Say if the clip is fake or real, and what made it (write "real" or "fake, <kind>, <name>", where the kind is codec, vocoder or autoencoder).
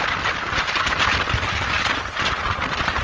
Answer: real